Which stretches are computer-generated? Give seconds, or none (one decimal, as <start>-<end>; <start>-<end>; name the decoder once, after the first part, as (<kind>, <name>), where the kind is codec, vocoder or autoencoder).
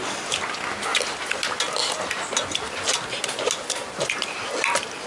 none